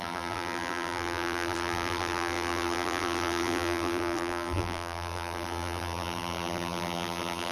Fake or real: fake